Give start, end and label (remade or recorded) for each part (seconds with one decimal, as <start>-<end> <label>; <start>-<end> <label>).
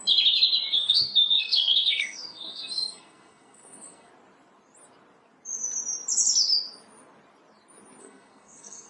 0.0-0.7 recorded; 0.7-4.1 remade; 4.1-8.0 recorded; 8.0-8.9 remade